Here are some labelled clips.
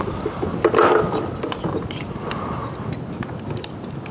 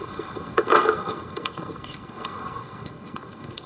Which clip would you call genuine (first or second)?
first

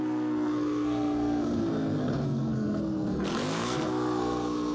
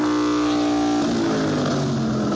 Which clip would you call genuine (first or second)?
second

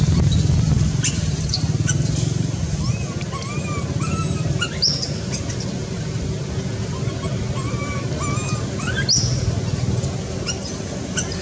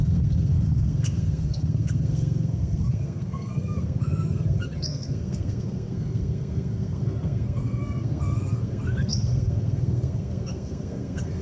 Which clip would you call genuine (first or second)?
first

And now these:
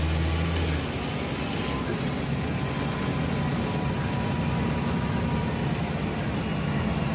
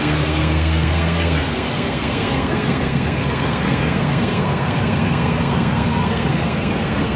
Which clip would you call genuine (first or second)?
first